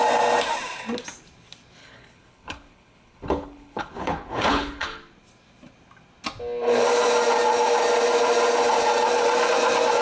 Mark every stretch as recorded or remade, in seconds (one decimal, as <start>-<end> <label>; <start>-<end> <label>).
0.0-1.8 recorded; 1.8-5.0 remade; 5.0-10.0 recorded

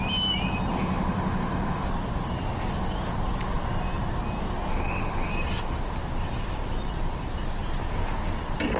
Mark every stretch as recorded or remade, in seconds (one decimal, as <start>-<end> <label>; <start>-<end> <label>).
0.0-0.7 recorded; 0.7-1.9 remade; 1.9-4.7 recorded; 4.7-5.3 remade; 5.3-8.8 recorded

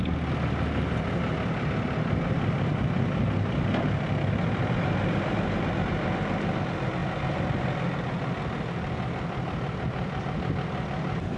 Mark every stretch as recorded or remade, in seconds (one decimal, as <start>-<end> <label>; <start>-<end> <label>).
0.0-11.4 recorded

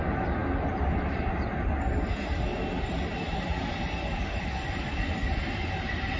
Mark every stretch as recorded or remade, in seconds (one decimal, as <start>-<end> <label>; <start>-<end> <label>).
0.0-6.2 recorded

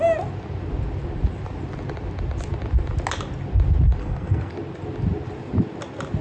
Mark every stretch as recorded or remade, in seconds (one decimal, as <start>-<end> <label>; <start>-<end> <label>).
0.0-4.0 recorded; 4.0-4.5 remade; 4.5-6.2 recorded

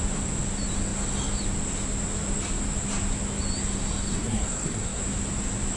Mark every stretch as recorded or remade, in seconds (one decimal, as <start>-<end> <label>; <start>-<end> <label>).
0.0-4.1 recorded; 4.1-5.0 remade; 5.0-5.8 recorded